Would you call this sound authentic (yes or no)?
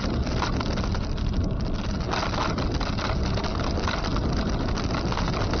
yes